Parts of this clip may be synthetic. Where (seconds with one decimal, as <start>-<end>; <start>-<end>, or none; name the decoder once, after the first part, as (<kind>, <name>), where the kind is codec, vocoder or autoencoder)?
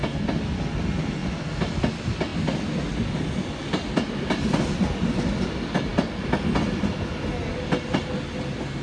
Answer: none